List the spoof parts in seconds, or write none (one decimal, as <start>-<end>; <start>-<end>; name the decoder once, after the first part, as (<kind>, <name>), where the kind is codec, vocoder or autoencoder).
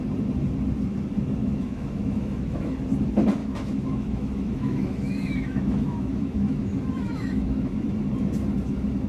1.4-2.7 (autoencoder, DAC-VAE); 3.4-7.9